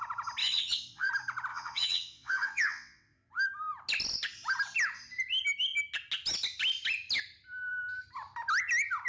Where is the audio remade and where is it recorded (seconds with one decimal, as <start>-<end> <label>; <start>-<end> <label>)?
0.0-0.4 recorded; 0.4-1.1 remade; 1.1-1.5 recorded; 1.5-3.3 remade; 3.3-9.1 recorded